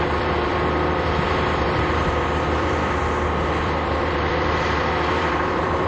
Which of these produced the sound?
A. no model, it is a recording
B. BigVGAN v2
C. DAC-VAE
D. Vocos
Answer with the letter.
B